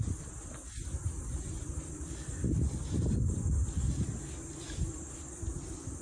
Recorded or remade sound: recorded